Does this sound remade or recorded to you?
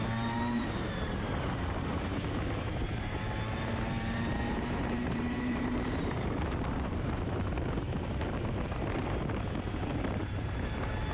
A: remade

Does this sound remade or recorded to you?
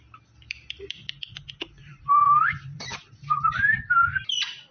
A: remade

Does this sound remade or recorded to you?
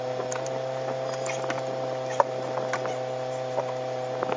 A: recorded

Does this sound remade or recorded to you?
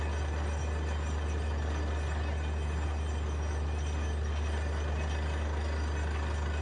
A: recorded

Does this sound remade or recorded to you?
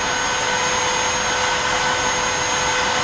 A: recorded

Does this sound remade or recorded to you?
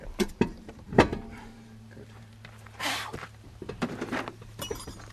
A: remade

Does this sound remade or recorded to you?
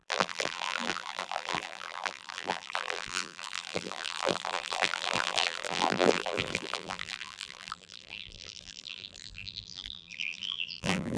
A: remade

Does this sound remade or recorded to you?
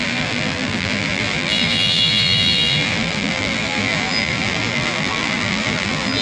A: remade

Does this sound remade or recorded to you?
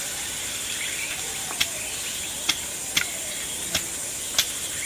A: recorded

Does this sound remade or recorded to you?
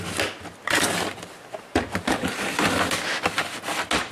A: recorded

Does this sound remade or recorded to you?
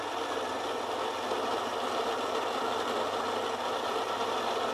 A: recorded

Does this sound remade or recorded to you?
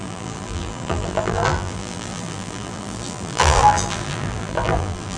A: remade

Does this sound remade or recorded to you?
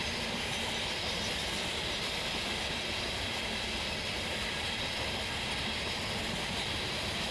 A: remade